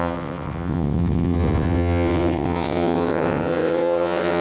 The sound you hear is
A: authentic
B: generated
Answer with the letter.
B